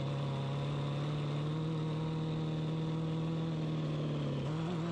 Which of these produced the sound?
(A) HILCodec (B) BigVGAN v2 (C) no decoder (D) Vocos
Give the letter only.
C